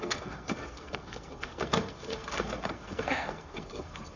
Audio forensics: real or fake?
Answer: fake